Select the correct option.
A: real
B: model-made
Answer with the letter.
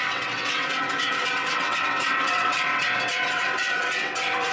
B